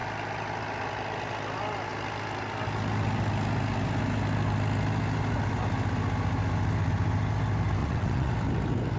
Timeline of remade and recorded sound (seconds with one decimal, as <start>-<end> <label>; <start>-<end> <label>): 0.0-7.8 recorded; 7.8-8.3 remade; 8.3-9.0 recorded